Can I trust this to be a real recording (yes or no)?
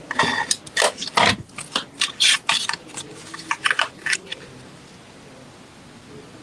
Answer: yes